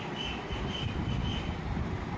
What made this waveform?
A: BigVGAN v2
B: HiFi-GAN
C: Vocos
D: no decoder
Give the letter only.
D